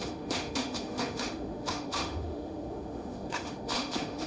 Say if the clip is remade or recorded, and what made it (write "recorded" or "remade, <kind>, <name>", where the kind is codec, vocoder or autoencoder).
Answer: remade, autoencoder, DAC-VAE